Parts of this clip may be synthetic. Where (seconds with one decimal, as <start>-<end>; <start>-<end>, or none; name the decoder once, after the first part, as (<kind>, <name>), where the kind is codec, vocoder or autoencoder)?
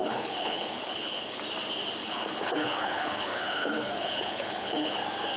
0.0-1.4 (codec, HILCodec); 2.0-5.0